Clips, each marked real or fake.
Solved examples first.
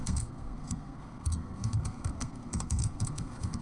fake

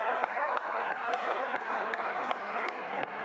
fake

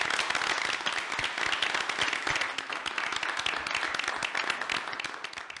real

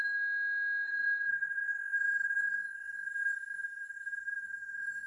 fake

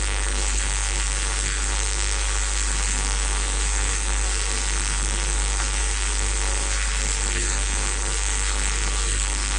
fake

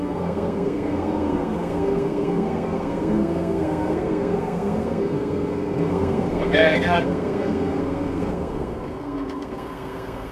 fake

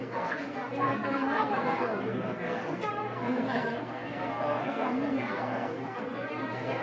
fake